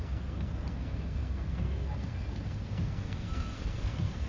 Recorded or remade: remade